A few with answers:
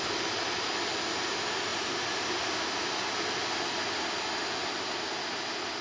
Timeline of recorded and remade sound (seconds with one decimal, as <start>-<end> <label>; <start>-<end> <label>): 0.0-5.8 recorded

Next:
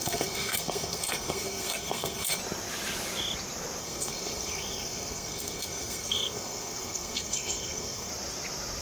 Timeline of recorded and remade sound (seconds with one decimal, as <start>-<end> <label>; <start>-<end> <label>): 0.0-2.4 remade; 2.4-3.8 recorded; 3.8-8.1 remade; 8.1-8.8 recorded

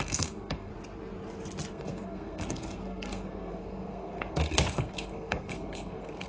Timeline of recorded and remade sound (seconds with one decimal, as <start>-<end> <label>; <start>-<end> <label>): 0.0-0.7 remade; 0.7-1.7 recorded; 1.7-6.3 remade

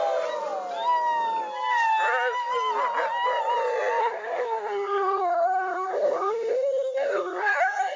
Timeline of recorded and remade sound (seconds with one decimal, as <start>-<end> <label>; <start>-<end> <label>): 0.0-4.0 recorded; 4.0-8.0 remade